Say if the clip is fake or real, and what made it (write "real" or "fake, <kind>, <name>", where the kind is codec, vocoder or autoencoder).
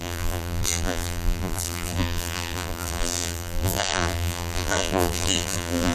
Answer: fake, vocoder, BigVGAN v2